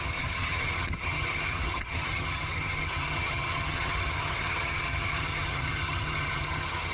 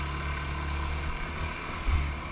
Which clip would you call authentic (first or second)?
second